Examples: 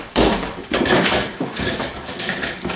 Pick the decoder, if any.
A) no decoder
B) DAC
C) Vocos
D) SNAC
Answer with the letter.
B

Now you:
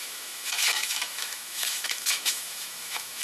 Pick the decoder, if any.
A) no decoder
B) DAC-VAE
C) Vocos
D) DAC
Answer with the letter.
B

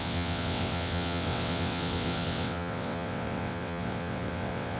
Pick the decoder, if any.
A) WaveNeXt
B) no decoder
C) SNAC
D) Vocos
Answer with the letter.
A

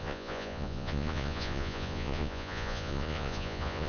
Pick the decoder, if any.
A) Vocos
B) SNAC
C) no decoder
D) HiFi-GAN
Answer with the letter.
A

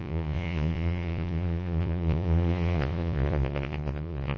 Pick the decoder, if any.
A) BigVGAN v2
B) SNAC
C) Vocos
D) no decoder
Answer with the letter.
C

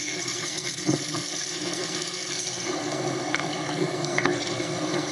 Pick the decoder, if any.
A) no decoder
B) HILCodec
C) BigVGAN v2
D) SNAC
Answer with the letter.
D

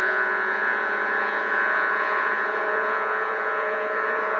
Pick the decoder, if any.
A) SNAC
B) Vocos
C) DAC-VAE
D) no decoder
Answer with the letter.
B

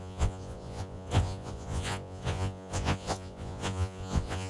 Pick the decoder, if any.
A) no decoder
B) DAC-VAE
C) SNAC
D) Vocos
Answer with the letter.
D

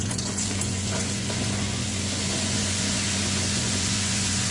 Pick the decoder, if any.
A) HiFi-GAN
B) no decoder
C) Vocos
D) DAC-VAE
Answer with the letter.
C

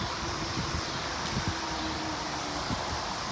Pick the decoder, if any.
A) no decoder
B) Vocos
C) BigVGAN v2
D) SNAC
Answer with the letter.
A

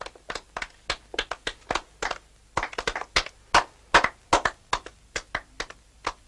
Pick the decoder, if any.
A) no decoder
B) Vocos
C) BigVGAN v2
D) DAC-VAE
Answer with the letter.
A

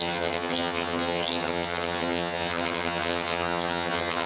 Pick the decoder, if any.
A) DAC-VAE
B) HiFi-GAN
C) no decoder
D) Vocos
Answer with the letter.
B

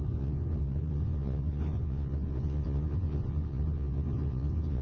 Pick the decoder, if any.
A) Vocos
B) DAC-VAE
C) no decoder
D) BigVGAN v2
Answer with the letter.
A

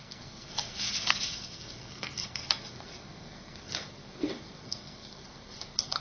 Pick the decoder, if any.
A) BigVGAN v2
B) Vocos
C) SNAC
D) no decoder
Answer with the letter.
C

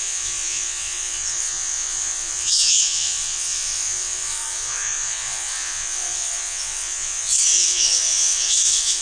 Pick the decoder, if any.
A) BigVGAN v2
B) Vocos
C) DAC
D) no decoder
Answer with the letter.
B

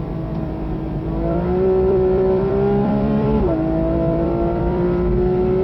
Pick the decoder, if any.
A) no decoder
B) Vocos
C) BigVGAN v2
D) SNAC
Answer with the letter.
C